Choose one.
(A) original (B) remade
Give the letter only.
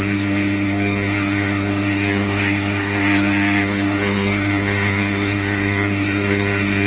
B